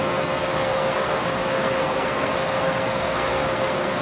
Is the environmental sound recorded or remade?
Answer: remade